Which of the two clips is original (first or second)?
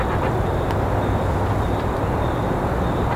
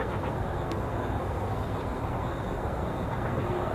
first